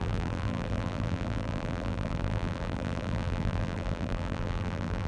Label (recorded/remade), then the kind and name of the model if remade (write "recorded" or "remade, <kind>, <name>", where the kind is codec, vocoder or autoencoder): remade, vocoder, BigVGAN v2